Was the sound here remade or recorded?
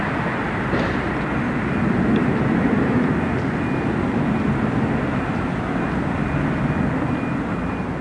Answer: recorded